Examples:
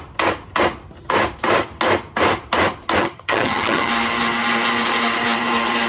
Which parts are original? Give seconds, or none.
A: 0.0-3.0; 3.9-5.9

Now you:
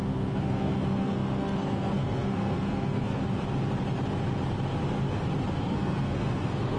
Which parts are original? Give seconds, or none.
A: 3.2-5.6

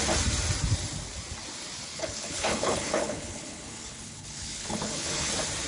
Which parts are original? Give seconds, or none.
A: 0.0-1.9; 5.3-5.7

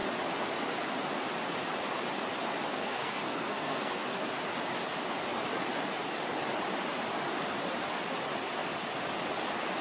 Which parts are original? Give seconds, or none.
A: 0.0-2.8; 4.4-9.8

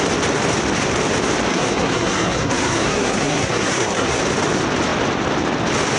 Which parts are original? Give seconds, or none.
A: 0.0-1.5; 4.2-6.0

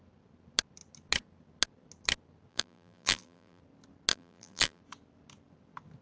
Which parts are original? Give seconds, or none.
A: 0.0-2.5; 3.6-4.1; 4.8-6.0